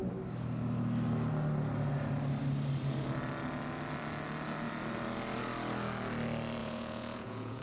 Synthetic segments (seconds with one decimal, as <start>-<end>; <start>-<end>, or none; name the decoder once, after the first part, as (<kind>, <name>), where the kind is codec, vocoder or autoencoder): 6.6-7.6 (vocoder, Vocos)